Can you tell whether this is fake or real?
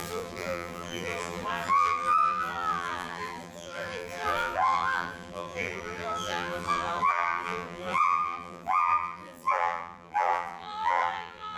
fake